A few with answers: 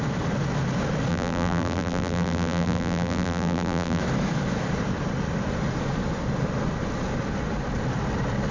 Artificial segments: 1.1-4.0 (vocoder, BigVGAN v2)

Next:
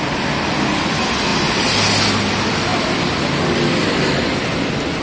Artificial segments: none

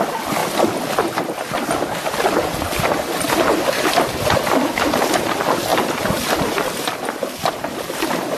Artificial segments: none

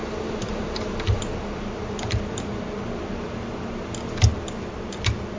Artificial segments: 0.0-1.2 (vocoder, BigVGAN v2)

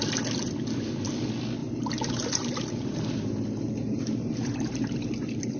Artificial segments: 1.6-5.0 (vocoder, BigVGAN v2)

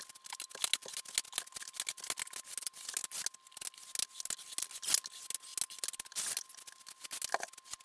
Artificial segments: none

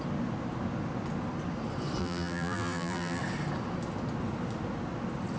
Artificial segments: 2.0-3.2 (vocoder, BigVGAN v2)